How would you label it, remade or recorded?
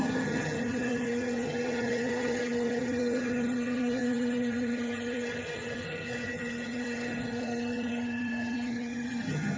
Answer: remade